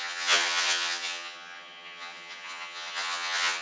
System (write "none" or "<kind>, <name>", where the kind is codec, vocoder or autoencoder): vocoder, HiFi-GAN